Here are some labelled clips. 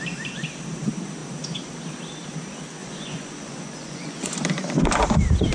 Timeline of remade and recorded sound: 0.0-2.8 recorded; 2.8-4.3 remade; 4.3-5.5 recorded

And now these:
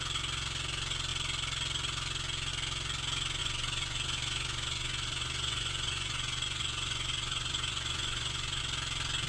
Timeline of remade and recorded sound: 0.0-3.4 recorded; 3.4-8.6 remade; 8.6-9.3 recorded

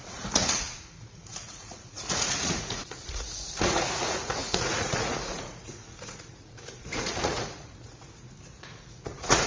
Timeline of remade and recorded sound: 0.0-9.5 remade

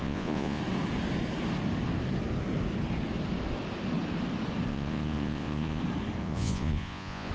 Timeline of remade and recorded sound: 0.0-0.6 remade; 0.6-4.7 recorded; 4.7-5.8 remade; 5.8-6.2 recorded; 6.2-7.3 remade